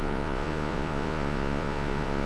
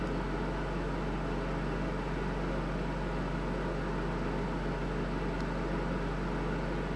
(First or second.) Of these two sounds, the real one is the second